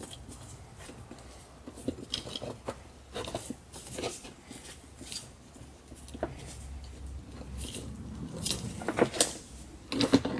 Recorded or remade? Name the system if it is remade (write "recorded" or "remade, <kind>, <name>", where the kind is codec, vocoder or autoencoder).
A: recorded